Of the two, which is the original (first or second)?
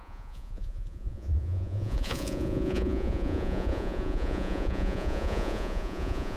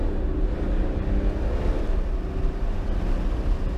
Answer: second